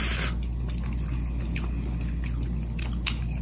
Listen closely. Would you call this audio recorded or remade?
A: recorded